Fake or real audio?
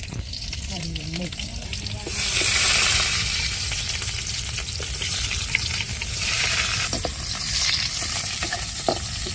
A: fake